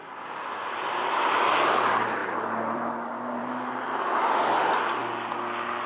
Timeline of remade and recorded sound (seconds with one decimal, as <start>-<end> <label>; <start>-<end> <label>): 0.0-2.2 recorded; 2.2-2.9 remade; 2.9-3.4 recorded; 3.4-4.2 remade; 4.2-5.9 recorded